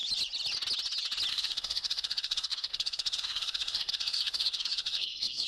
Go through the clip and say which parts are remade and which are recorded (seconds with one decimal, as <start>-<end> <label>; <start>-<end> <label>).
0.0-1.3 recorded; 1.3-5.5 remade